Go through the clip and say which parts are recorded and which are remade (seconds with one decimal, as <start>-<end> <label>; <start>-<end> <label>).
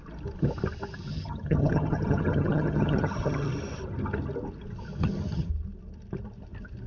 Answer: 0.0-1.1 recorded; 1.1-3.5 remade; 3.5-5.0 recorded; 5.0-5.5 remade; 5.5-6.9 recorded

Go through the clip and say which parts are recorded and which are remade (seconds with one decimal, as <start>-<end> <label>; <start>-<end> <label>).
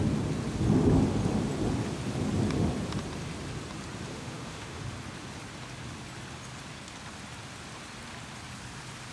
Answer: 0.0-4.1 recorded; 4.1-4.8 remade; 4.8-9.1 recorded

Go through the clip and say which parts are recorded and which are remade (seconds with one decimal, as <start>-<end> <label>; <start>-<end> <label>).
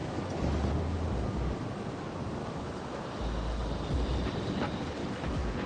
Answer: 0.0-2.4 recorded; 2.4-3.1 remade; 3.1-5.0 recorded; 5.0-5.7 remade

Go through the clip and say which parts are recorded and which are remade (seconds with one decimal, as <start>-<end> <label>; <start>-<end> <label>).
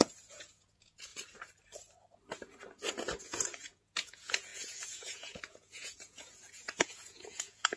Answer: 0.0-1.1 remade; 1.1-3.2 recorded; 3.2-7.8 remade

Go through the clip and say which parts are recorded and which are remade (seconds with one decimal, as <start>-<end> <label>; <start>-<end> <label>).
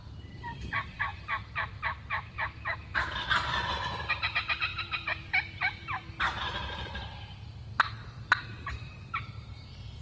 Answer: 0.0-4.7 remade; 4.7-8.6 recorded; 8.6-10.0 remade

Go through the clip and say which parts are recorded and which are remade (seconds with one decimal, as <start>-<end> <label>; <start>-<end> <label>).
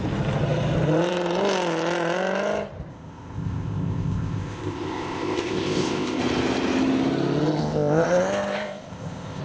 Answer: 0.0-2.9 recorded; 2.9-6.2 remade; 6.2-7.6 recorded; 7.6-9.4 remade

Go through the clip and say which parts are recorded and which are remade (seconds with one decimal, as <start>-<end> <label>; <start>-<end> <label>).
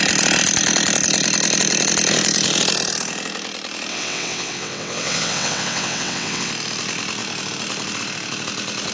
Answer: 0.0-3.9 recorded; 3.9-6.5 remade; 6.5-8.9 recorded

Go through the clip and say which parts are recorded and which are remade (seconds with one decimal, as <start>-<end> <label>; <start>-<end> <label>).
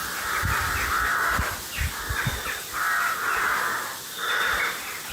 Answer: 0.0-5.1 recorded